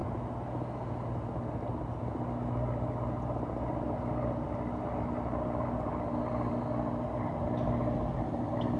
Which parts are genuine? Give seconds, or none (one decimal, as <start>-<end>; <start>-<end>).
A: 0.0-8.8